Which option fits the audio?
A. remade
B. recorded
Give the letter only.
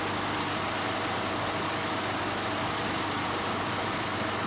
B